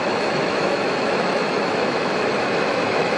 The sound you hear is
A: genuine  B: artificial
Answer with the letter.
B